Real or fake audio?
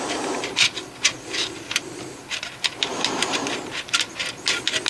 real